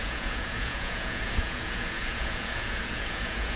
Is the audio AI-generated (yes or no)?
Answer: yes